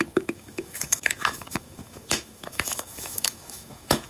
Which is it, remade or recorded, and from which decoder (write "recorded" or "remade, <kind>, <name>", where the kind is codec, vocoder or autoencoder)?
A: remade, autoencoder, DAC-VAE